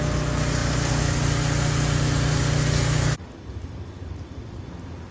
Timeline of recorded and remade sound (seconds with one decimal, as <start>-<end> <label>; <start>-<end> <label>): 0.0-5.1 recorded